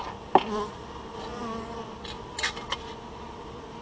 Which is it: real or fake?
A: real